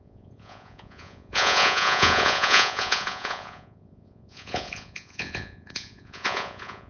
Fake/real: fake